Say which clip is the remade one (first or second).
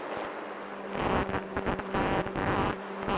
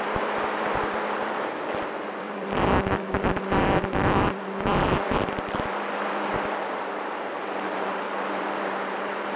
second